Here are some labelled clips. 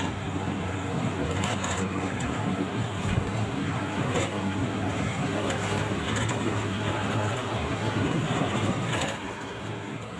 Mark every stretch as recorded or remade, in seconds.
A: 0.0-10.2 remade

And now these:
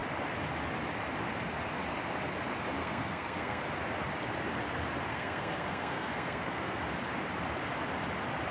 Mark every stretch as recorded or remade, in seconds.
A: 0.0-2.8 recorded; 2.8-3.6 remade; 3.6-5.1 recorded; 5.1-6.8 remade; 6.8-8.5 recorded

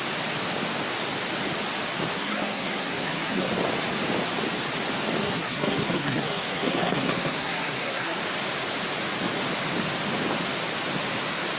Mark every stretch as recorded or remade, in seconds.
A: 0.0-2.1 recorded; 2.1-3.5 remade; 3.5-5.2 recorded; 5.2-8.2 remade; 8.2-11.6 recorded

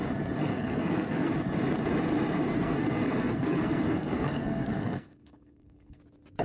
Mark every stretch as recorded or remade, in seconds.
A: 0.0-0.4 recorded; 0.4-1.3 remade; 1.3-2.4 recorded; 2.4-6.0 remade; 6.0-6.4 recorded

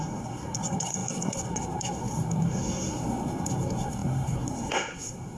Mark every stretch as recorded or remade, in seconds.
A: 0.0-5.4 remade

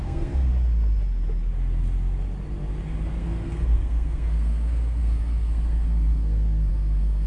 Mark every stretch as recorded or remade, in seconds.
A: 0.0-0.5 remade; 0.5-3.2 recorded; 3.2-7.3 remade

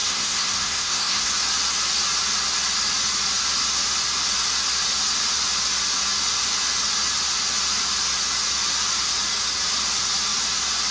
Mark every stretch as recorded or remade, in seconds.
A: 0.0-1.3 remade; 1.3-10.9 recorded

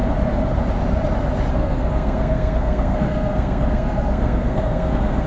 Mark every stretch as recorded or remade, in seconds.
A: 0.0-1.5 recorded; 1.5-5.3 remade